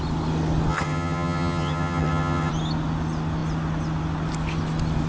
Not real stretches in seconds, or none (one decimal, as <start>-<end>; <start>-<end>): 0.7-2.5